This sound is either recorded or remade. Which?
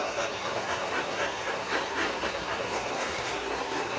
remade